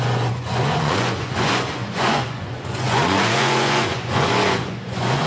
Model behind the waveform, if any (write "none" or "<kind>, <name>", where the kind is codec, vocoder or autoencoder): vocoder, Vocos